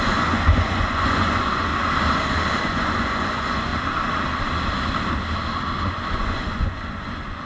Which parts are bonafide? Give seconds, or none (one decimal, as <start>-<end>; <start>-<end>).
1.7-2.6; 3.7-5.9